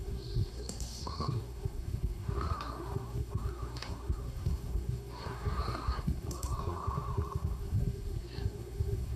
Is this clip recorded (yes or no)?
no